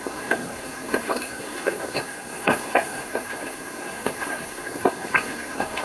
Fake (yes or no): yes